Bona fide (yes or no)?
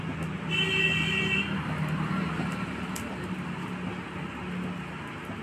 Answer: yes